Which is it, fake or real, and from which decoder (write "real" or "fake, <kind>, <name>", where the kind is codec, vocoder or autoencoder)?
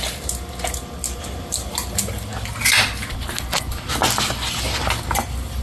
real